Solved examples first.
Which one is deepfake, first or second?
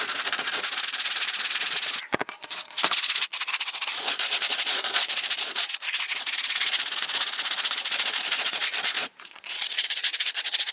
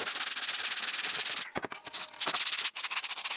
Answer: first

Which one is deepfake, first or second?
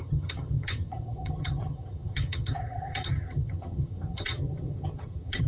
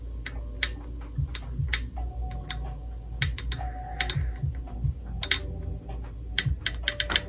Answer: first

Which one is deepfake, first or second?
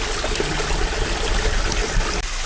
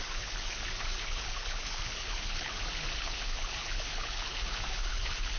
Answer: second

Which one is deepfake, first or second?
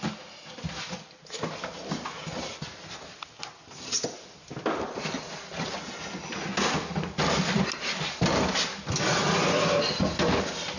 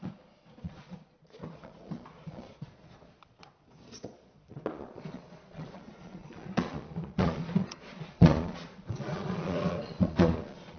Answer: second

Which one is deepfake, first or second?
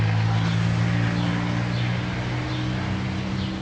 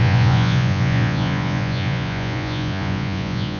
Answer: second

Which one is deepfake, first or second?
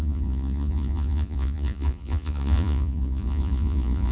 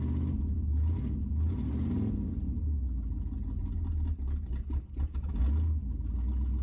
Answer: first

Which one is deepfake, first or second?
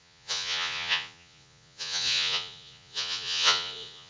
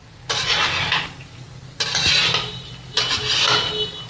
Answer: first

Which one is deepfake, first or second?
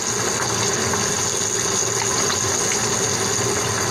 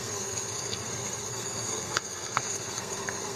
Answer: second